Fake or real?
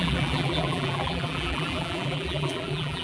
fake